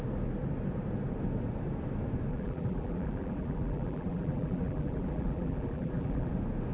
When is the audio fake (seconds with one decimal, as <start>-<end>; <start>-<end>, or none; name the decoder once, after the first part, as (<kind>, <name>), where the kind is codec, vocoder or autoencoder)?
2.3-6.3 (vocoder, BigVGAN v2)